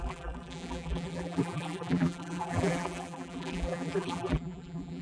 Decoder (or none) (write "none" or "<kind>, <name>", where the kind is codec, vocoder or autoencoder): vocoder, BigVGAN v2